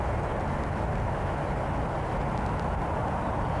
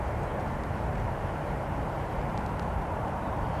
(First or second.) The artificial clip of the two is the second